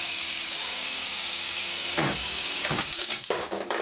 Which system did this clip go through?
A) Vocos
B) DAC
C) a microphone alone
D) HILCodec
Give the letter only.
B